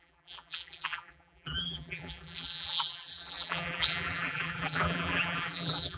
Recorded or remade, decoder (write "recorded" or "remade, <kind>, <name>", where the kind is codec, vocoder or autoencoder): remade, vocoder, BigVGAN v2